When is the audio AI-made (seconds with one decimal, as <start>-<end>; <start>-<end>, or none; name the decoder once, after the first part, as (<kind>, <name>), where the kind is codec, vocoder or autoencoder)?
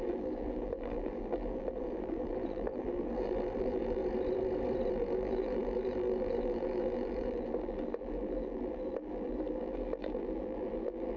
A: 0.0-4.0 (vocoder, BigVGAN v2); 4.9-11.2